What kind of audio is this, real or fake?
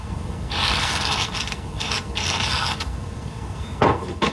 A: fake